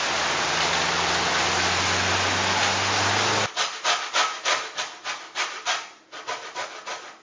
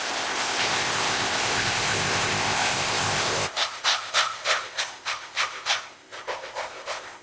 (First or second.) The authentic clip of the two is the first